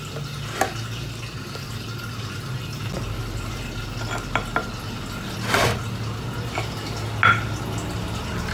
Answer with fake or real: real